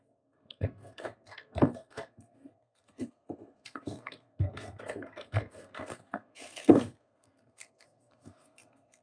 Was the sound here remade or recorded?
remade